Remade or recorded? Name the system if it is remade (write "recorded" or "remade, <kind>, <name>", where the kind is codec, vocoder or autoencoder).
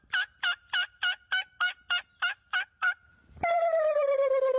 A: remade, vocoder, BigVGAN v2